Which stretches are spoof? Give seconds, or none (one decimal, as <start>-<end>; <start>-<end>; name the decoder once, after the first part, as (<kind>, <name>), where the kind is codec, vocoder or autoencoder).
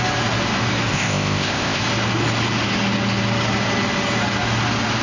0.9-1.8 (codec, ZipCodec)